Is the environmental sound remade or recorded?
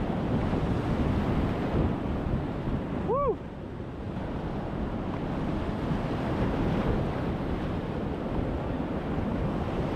recorded